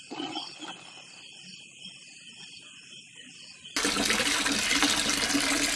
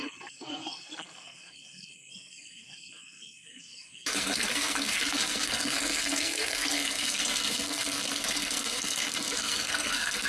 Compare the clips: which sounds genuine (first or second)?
first